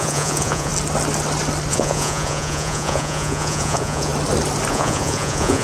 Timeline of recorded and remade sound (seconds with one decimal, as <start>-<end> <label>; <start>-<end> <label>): 0.0-0.7 remade; 0.7-1.7 recorded; 1.7-4.1 remade; 4.1-4.7 recorded; 4.7-5.6 remade